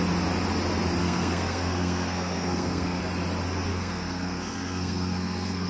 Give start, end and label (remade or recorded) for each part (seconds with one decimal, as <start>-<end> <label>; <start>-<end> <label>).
0.0-1.0 recorded; 1.0-3.0 remade; 3.0-3.7 recorded; 3.7-5.7 remade

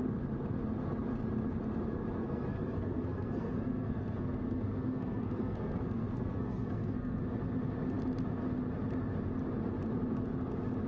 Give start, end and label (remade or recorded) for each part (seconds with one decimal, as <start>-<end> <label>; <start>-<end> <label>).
0.0-2.2 recorded; 2.2-7.2 remade; 7.2-10.9 recorded

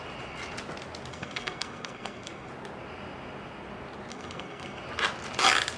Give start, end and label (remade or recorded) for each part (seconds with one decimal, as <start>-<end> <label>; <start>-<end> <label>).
0.0-1.1 recorded; 1.1-2.5 remade; 2.5-4.1 recorded; 4.1-4.8 remade; 4.8-5.8 recorded

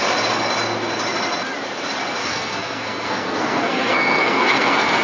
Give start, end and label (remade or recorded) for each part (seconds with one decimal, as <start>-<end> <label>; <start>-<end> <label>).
0.0-2.2 recorded; 2.2-5.0 remade

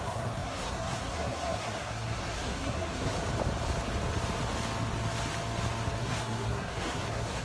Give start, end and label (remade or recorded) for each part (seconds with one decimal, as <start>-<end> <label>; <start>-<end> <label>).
0.0-3.1 remade; 3.1-6.0 recorded; 6.0-7.4 remade

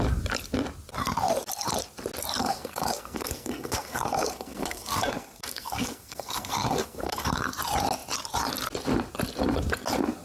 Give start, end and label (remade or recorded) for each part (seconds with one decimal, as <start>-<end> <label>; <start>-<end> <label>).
0.0-2.4 recorded; 2.4-7.5 remade; 7.5-10.2 recorded

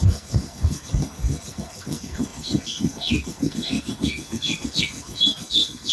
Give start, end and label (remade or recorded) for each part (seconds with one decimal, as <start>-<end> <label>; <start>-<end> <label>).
0.0-5.9 remade